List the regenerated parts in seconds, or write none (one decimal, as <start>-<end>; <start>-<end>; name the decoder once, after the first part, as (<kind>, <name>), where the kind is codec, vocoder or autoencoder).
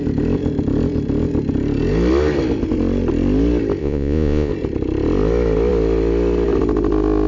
3.8-4.5 (vocoder, Vocos)